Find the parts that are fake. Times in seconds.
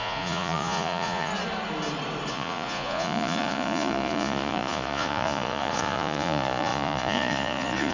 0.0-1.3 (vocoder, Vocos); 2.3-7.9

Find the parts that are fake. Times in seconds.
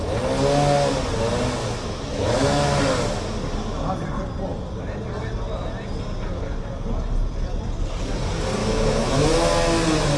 1.6-2.8 (autoencoder, DAC-VAE); 8.6-9.3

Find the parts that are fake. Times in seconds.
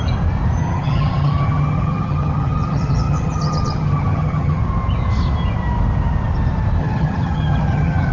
0.6-4.6 (vocoder, HiFi-GAN); 6.8-8.1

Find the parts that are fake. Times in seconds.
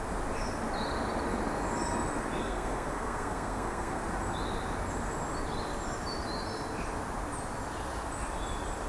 2.4-4.0 (codec, SNAC)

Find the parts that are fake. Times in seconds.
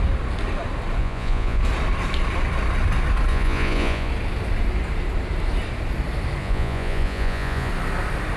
1.0-1.6 (vocoder, Vocos); 3.3-4.1; 6.4-7.7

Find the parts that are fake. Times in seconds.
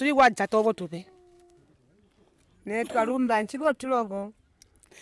0.8-1.7 (codec, SNAC); 3.1-4.1